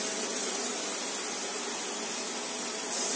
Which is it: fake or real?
real